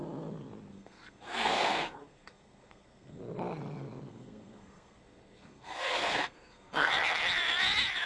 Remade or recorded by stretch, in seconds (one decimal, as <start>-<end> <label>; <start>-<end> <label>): 0.0-0.7 recorded; 0.7-3.2 remade; 3.2-4.1 recorded; 4.1-6.9 remade; 6.9-8.1 recorded